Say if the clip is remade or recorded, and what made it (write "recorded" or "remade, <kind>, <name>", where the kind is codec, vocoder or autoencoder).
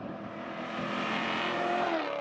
remade, vocoder, BigVGAN v2